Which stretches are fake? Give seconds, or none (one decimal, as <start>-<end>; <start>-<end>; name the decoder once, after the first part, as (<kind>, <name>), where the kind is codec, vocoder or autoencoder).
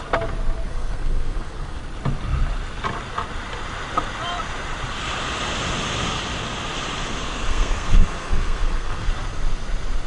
0.7-1.8 (codec, SNAC); 7.2-9.1